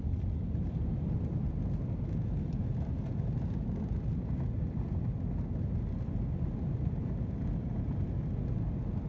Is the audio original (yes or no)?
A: yes